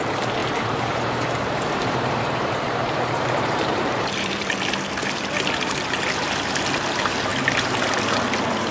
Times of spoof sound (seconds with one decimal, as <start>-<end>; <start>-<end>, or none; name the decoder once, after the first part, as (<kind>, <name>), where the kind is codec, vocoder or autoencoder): 0.4-4.5 (vocoder, BigVGAN v2)